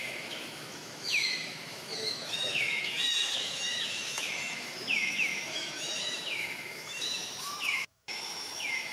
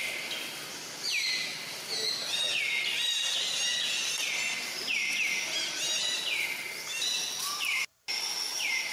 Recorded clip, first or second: second